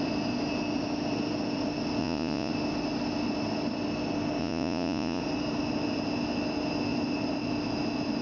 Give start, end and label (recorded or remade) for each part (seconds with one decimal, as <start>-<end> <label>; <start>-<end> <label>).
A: 0.0-2.0 recorded; 2.0-2.5 remade; 2.5-4.4 recorded; 4.4-5.2 remade; 5.2-8.2 recorded